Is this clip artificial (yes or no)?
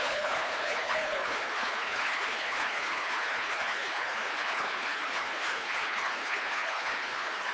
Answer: yes